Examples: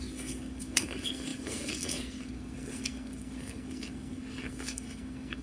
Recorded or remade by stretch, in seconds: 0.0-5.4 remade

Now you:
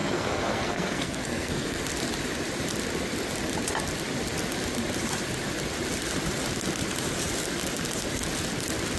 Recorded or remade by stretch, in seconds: 0.0-1.8 remade; 1.8-9.0 recorded

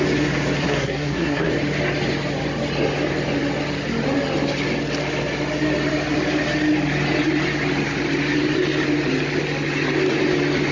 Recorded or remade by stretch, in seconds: 0.0-0.6 recorded; 0.6-1.5 remade; 1.5-10.7 recorded

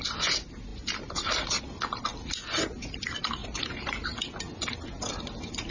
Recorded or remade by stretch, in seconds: 0.0-0.7 recorded; 0.7-1.6 remade; 1.6-3.4 recorded; 3.4-4.2 remade; 4.2-5.7 recorded

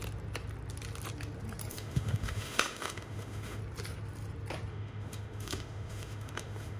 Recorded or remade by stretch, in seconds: 0.0-1.7 recorded; 1.7-3.6 remade; 3.6-4.7 recorded; 4.7-6.8 remade

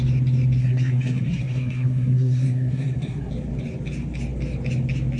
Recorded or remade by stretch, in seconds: 0.0-0.6 recorded; 0.6-3.3 remade; 3.3-5.2 recorded

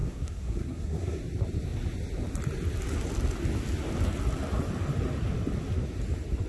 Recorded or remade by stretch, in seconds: 0.0-1.2 remade; 1.2-6.5 recorded

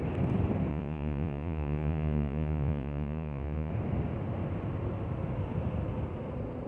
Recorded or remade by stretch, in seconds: 0.0-0.7 recorded; 0.7-3.7 remade; 3.7-6.7 recorded